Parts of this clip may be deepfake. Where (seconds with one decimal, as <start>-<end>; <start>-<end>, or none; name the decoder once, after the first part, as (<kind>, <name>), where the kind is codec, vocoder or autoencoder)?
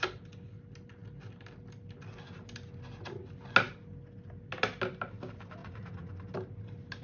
5.6-6.1 (vocoder, Vocos)